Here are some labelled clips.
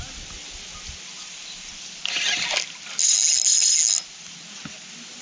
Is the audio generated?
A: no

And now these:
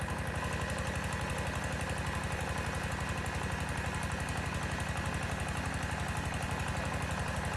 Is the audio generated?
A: no